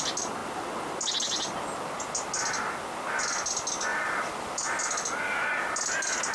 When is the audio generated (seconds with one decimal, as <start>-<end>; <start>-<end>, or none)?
3.9-4.8

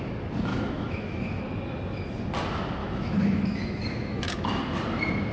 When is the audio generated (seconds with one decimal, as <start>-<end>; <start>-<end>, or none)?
0.5-1.4; 2.8-4.6

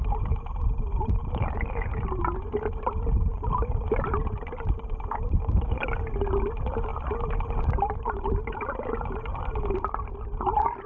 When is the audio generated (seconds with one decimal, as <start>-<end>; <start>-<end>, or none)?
3.3-5.7

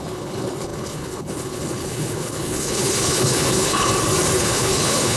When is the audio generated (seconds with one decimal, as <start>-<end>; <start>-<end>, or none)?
0.0-3.9; 4.4-5.2

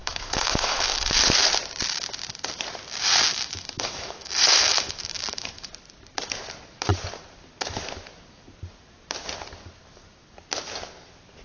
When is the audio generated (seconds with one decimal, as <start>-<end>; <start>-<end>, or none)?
0.0-1.2; 3.3-5.7

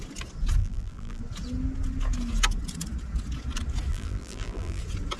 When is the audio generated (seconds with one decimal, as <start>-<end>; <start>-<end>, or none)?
0.6-1.2; 3.9-4.8

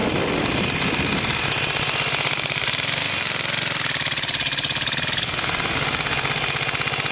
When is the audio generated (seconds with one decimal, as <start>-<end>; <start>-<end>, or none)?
none

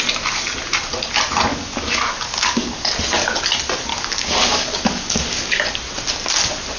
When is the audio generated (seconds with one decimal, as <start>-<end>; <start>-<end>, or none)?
1.5-2.9; 3.9-5.6